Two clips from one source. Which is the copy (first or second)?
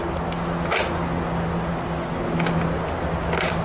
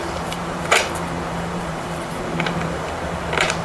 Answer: second